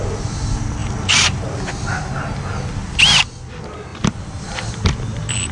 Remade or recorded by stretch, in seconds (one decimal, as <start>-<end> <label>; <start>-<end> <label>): 0.0-3.9 recorded; 3.9-4.7 remade; 4.7-5.5 recorded